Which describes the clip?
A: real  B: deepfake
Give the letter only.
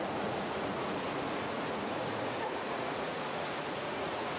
B